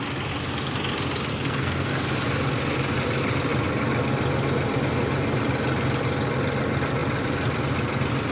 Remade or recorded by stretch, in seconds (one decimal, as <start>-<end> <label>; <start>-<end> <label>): 0.0-1.3 recorded; 1.3-1.9 remade; 1.9-8.3 recorded